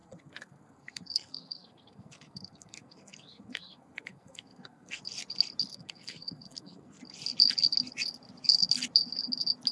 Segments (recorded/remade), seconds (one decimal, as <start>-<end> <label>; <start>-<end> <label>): 0.0-5.0 remade; 5.0-5.7 recorded; 5.7-7.0 remade; 7.0-9.7 recorded